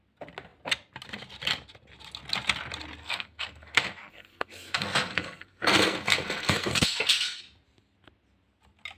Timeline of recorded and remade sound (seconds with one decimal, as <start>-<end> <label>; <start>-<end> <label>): 0.0-3.0 recorded; 3.0-7.4 remade; 7.4-9.0 recorded